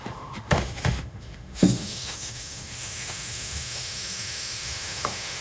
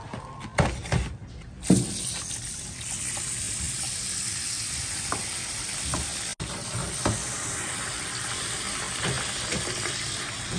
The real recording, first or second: second